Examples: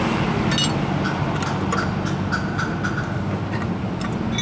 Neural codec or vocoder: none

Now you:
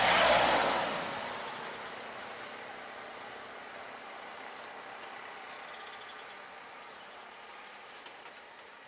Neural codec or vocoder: none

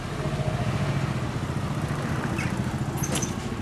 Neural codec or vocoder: none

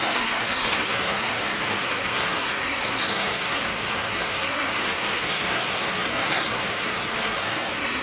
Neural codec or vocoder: codec, SNAC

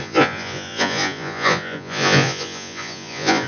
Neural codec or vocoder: vocoder, Vocos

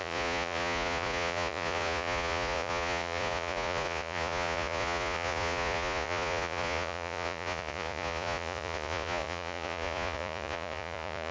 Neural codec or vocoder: vocoder, Vocos